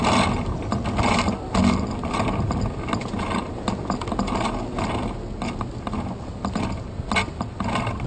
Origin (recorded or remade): recorded